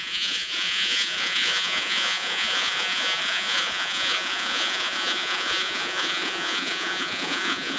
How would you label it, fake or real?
fake